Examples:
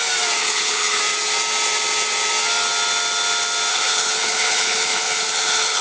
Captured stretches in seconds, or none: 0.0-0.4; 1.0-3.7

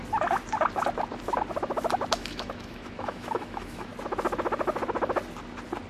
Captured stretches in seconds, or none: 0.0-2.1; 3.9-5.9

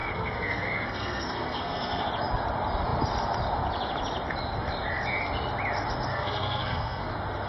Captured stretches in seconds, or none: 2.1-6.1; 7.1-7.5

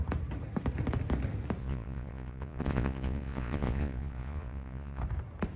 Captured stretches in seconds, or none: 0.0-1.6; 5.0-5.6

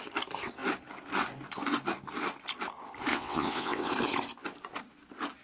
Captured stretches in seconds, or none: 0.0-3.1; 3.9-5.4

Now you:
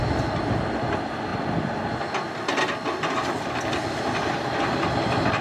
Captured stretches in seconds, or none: 0.0-5.4

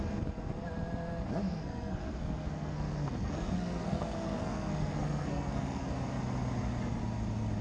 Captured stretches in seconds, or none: 0.0-1.5; 5.9-7.6

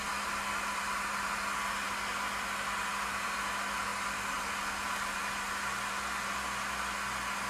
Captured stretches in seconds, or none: 0.0-7.5